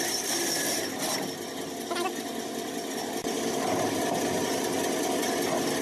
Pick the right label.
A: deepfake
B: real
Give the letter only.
B